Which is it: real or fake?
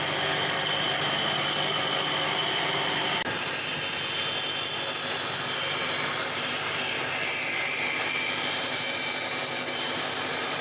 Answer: real